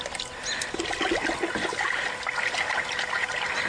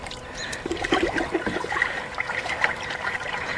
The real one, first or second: first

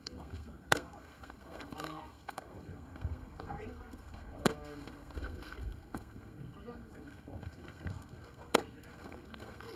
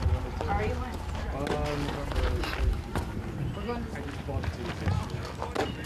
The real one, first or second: second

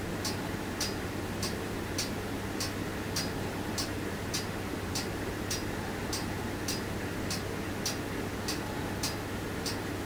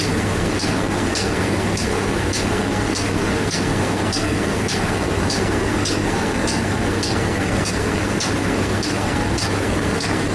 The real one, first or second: first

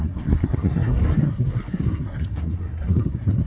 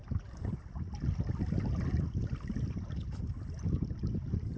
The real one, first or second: second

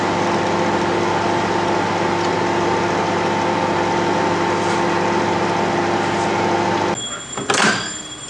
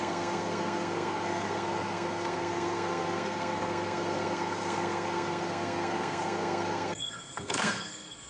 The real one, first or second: first